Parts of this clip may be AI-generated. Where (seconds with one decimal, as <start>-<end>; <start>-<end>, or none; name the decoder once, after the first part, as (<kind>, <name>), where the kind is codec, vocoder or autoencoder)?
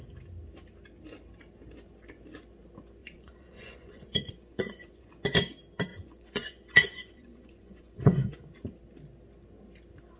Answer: 3.0-5.1 (vocoder, Vocos); 5.9-8.4